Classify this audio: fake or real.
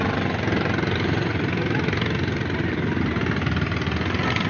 real